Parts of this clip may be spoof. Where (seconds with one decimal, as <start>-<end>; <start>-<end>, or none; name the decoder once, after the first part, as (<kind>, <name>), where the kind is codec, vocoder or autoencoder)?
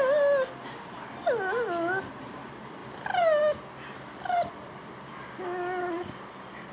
none